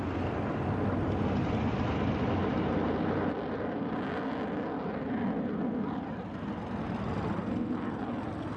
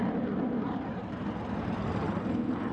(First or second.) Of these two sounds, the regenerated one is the second